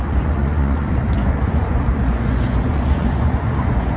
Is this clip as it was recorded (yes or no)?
no